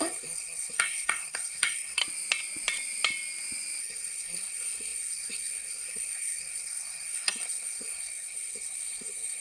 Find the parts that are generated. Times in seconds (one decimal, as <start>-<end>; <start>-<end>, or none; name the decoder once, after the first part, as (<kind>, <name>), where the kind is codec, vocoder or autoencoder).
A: 0.0-2.0 (codec, SNAC); 3.8-9.4